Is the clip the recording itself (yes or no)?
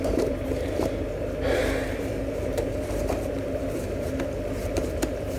no